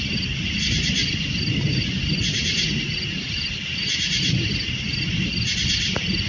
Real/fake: real